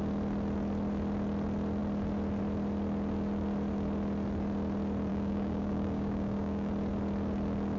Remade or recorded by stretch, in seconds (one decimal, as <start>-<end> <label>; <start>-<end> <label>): 0.0-5.1 recorded; 5.1-6.7 remade; 6.7-7.8 recorded